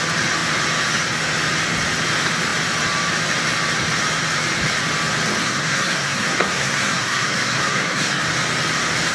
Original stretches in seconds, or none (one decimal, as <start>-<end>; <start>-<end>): 0.0-5.4; 8.2-9.1